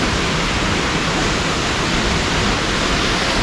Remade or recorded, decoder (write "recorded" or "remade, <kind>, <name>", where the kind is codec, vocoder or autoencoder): recorded